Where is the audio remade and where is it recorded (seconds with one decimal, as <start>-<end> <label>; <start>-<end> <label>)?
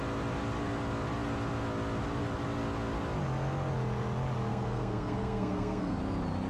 0.0-4.5 recorded; 4.5-6.0 remade; 6.0-6.5 recorded